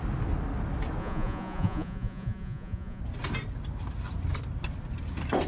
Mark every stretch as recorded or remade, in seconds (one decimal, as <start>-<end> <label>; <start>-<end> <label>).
0.0-1.0 recorded; 1.0-3.0 remade; 3.0-5.5 recorded

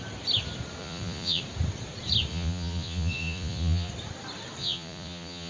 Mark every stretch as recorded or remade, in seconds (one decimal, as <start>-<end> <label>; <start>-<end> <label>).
0.0-0.8 recorded; 0.8-1.4 remade; 1.4-2.3 recorded; 2.3-3.9 remade; 3.9-4.6 recorded; 4.6-5.5 remade